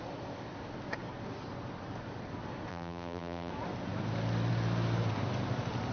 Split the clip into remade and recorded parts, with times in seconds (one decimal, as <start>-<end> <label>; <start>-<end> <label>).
0.0-2.7 recorded; 2.7-3.5 remade; 3.5-5.9 recorded